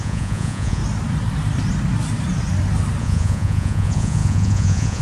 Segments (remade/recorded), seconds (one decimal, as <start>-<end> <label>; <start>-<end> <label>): 0.0-0.8 remade; 0.8-3.0 recorded; 3.0-5.0 remade